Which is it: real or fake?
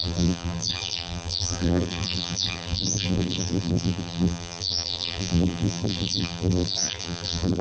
fake